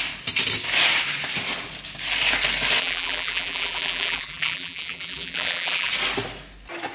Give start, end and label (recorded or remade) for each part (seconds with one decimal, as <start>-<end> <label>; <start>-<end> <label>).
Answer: 0.0-2.8 recorded; 2.8-5.9 remade; 5.9-6.9 recorded